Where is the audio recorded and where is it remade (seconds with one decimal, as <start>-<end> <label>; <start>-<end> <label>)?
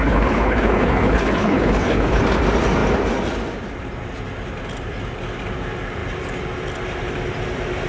0.0-2.2 remade; 2.2-7.9 recorded